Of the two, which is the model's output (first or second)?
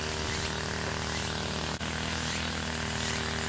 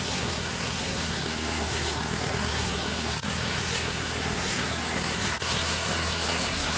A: second